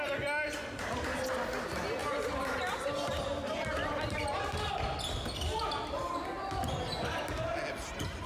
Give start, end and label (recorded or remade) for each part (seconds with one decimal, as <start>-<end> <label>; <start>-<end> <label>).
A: 0.0-8.3 recorded